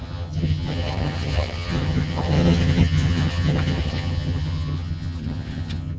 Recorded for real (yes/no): no